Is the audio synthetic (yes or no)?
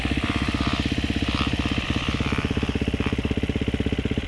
no